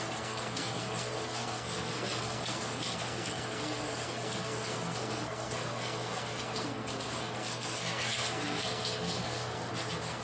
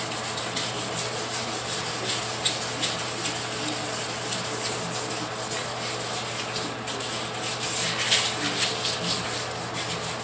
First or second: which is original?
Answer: second